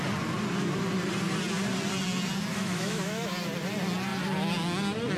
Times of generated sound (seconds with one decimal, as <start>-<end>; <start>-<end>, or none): 2.5-3.3